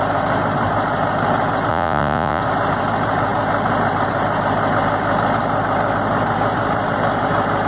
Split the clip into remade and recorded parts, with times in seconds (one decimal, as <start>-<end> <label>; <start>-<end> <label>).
0.0-1.7 recorded; 1.7-2.4 remade; 2.4-7.7 recorded